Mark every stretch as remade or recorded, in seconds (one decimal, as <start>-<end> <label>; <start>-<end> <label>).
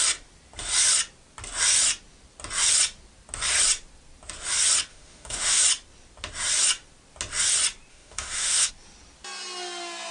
0.0-4.9 recorded; 4.9-5.6 remade; 5.6-7.9 recorded; 7.9-8.7 remade; 8.7-10.1 recorded